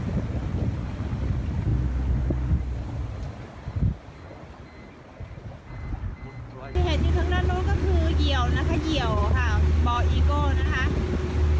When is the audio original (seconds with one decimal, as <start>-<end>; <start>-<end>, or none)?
0.0-9.2; 10.2-11.6

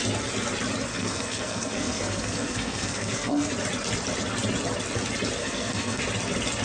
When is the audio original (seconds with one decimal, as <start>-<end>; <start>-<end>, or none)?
0.0-0.9; 3.5-5.4; 6.0-6.6

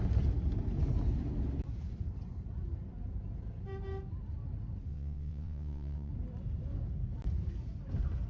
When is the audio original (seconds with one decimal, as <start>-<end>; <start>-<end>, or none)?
0.0-4.9; 6.1-8.3

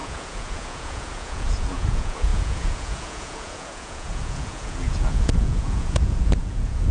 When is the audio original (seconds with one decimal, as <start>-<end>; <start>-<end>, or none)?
none